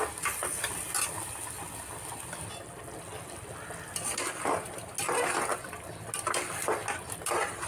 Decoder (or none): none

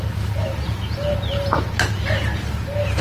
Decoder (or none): none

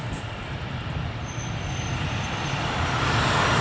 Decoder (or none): vocoder, BigVGAN v2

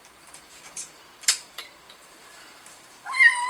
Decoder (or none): vocoder, BigVGAN v2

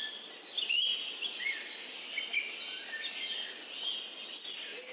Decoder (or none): none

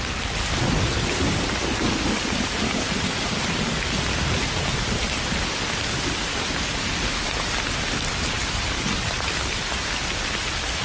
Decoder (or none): none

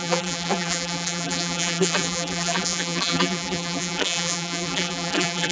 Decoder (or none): vocoder, BigVGAN v2